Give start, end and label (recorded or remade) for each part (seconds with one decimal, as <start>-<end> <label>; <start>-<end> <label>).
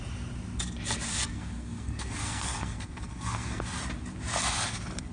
0.0-1.1 recorded; 1.1-3.8 remade; 3.8-5.1 recorded